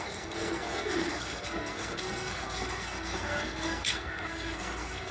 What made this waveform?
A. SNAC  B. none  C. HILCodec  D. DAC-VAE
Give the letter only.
A